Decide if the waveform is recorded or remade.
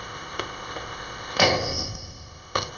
remade